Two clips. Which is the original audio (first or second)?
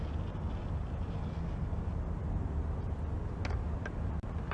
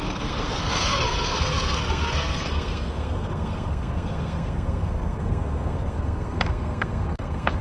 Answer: first